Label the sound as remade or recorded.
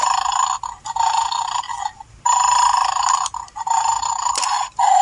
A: recorded